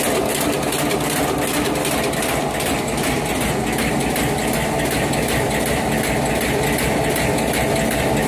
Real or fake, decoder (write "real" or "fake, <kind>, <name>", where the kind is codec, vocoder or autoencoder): real